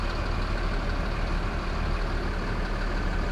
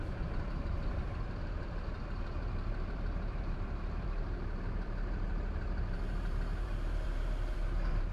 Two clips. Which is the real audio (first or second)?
first